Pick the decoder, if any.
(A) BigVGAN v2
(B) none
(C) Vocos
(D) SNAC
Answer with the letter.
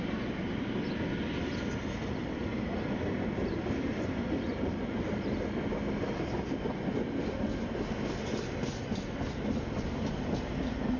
B